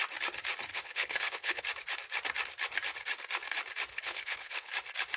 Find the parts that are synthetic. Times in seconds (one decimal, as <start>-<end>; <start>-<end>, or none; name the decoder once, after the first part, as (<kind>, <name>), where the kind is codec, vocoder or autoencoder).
0.7-1.6 (codec, HILCodec); 3.9-4.7